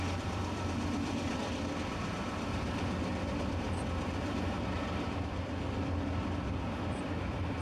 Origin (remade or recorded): remade